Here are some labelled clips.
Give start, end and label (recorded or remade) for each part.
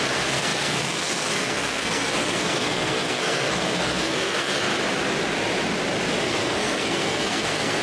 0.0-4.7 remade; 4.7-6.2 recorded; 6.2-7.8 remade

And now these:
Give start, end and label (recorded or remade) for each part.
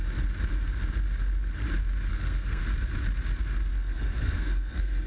0.0-2.1 recorded; 2.1-2.6 remade; 2.6-3.7 recorded; 3.7-5.1 remade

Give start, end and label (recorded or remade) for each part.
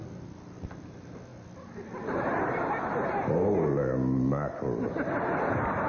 0.0-5.9 recorded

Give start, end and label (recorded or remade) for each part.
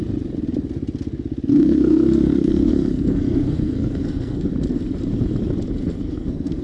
0.0-1.5 recorded; 1.5-4.5 remade; 4.5-5.8 recorded; 5.8-6.6 remade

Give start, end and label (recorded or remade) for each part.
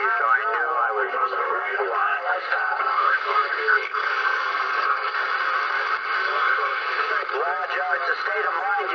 0.0-1.0 recorded; 1.0-5.3 remade; 5.3-6.3 recorded; 6.3-7.1 remade; 7.1-8.9 recorded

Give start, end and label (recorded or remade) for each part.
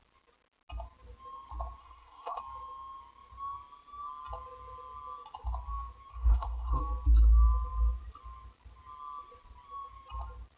0.0-1.8 recorded; 1.8-2.4 remade; 2.4-6.1 recorded; 6.1-6.8 remade; 6.8-10.6 recorded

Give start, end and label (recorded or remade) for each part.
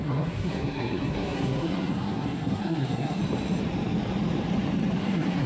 0.0-3.2 remade; 3.2-5.0 recorded; 5.0-5.5 remade